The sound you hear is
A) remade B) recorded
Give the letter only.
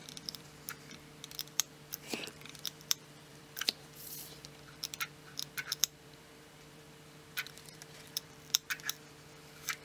A